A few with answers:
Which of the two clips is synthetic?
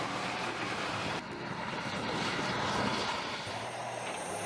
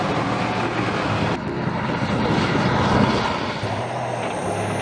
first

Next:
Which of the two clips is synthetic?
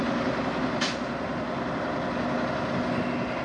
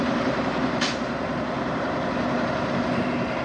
second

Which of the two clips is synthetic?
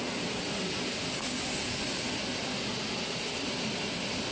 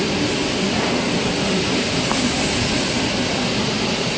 second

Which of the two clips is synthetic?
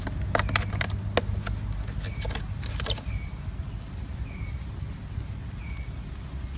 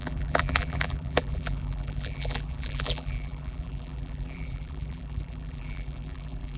second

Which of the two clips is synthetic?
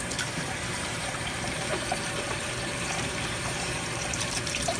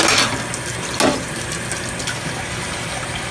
first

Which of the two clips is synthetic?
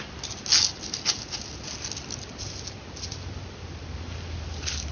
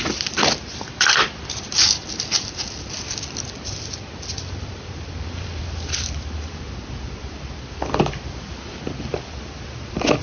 second